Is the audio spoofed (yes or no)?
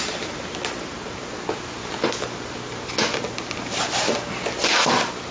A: no